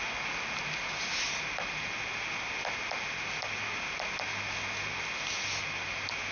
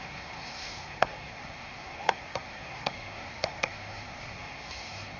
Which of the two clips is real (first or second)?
first